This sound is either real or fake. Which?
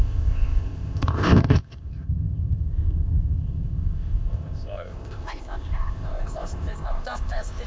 fake